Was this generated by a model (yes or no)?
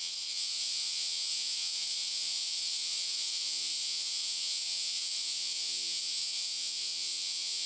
yes